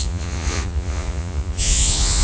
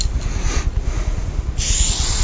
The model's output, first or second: first